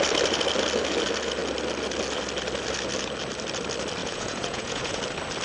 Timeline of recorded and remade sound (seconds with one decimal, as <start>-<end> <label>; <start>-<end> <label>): 0.0-4.0 recorded; 4.0-5.0 remade; 5.0-5.4 recorded

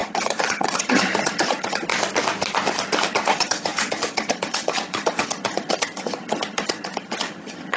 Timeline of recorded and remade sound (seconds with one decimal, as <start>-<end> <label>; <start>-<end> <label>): 0.0-1.9 remade; 1.9-3.1 recorded; 3.1-7.8 remade